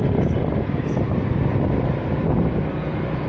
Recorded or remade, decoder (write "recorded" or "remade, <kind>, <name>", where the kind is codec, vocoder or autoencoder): recorded